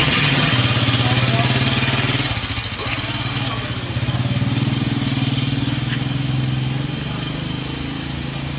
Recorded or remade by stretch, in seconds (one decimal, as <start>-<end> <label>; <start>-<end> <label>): 0.0-0.5 remade; 0.5-8.6 recorded